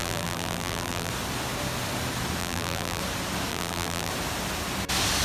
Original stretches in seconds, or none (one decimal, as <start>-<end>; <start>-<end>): 1.1-2.4; 3.0-3.5; 4.1-5.2